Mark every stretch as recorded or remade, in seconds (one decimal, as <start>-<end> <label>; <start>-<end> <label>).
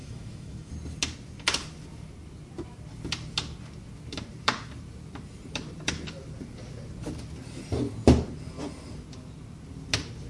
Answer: 0.0-0.7 remade; 0.7-10.3 recorded